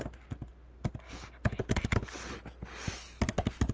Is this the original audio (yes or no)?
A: yes